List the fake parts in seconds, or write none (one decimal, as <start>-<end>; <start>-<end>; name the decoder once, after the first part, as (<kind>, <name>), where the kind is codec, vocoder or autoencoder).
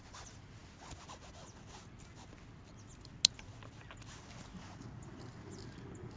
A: none